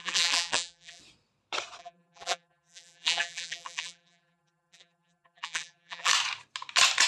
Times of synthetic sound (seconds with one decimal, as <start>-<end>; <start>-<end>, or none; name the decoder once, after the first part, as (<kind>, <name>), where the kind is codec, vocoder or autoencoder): 0.0-1.0 (vocoder, BigVGAN v2); 1.8-6.1